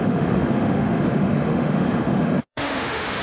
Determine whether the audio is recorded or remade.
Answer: remade